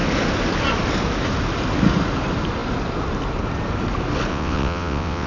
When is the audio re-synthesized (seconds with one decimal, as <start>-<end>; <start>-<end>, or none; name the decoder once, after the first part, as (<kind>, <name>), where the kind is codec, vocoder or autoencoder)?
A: 4.3-5.3 (vocoder, WaveNeXt)